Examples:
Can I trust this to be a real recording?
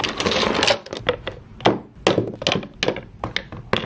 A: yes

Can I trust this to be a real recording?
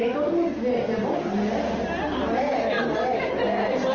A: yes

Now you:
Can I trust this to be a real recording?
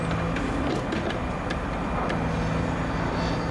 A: yes